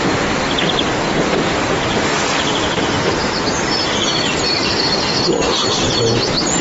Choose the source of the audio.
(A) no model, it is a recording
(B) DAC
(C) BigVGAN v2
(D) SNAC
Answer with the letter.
A